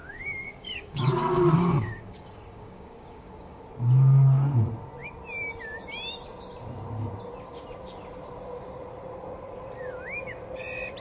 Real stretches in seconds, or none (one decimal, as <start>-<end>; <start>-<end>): 3.6-11.0